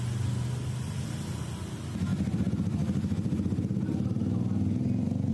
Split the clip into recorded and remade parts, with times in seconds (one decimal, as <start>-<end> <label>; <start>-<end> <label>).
0.0-5.3 recorded